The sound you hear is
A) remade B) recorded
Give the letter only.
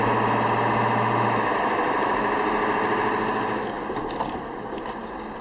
B